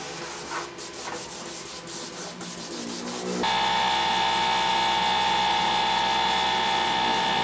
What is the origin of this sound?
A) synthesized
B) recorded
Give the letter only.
B